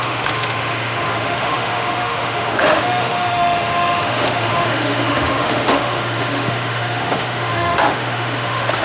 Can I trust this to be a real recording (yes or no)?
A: no